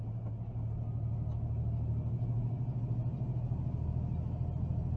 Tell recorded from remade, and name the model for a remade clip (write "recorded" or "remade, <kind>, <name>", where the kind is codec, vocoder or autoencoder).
recorded